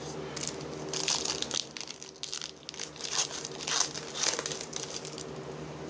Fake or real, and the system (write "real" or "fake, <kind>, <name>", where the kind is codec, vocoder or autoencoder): real